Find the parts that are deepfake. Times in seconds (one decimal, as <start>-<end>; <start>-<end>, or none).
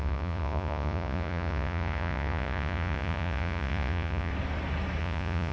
0.0-4.3; 5.0-5.5